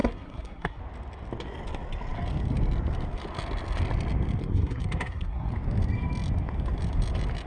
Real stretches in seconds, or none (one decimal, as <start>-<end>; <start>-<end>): 0.8-4.4; 5.5-7.5